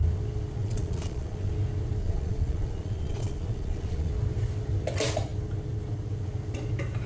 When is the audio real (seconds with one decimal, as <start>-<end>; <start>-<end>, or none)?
0.0-0.6; 1.5-2.0; 4.1-7.1